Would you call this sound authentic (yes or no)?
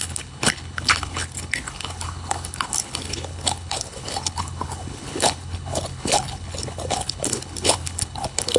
no